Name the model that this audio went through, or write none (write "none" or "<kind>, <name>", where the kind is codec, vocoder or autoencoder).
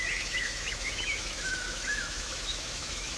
autoencoder, DAC-VAE